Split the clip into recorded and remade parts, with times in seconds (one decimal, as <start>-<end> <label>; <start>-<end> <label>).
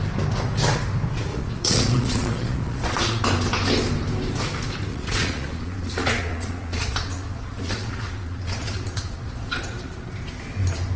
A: 0.0-1.3 recorded; 1.3-3.2 remade; 3.2-4.9 recorded; 4.9-10.1 remade; 10.1-11.0 recorded